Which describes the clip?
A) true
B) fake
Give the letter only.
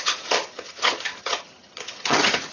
B